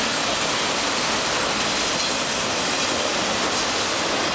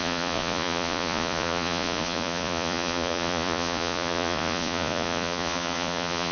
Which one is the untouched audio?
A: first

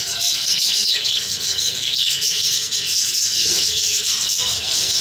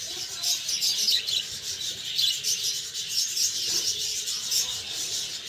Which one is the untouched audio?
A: second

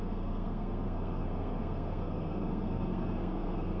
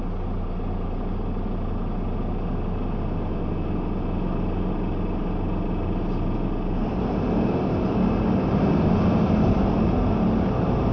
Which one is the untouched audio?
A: second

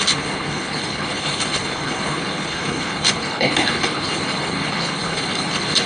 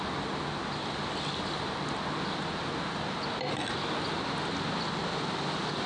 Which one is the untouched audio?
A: second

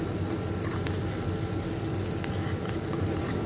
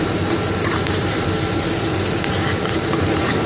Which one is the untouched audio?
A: first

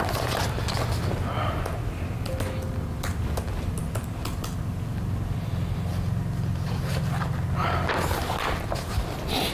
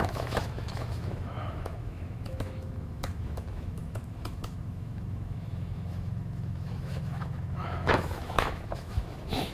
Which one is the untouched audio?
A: first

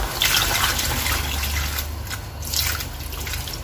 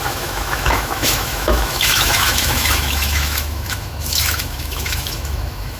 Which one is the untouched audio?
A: first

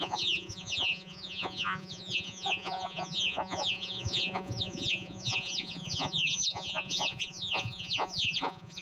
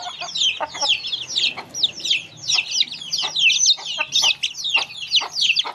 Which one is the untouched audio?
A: second